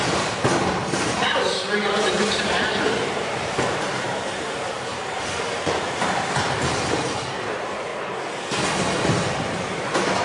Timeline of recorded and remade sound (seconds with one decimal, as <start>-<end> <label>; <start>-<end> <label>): 0.0-7.9 remade; 7.9-10.2 recorded